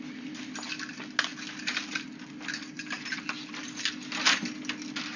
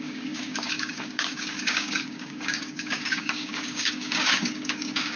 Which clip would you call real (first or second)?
first